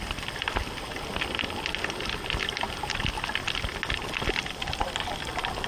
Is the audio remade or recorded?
recorded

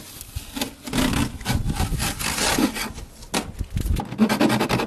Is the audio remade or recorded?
recorded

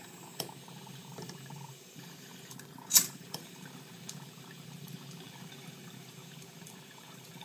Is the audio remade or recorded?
remade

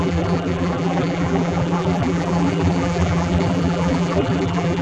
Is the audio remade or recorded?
remade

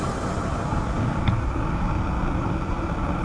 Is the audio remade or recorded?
recorded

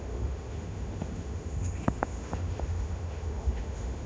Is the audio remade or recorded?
remade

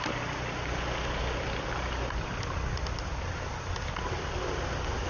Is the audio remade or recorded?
recorded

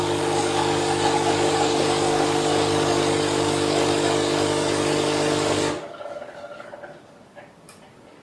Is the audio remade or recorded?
remade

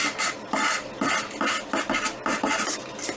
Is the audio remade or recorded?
recorded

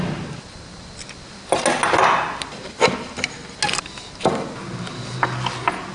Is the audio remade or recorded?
recorded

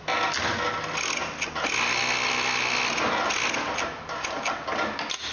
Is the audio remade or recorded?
recorded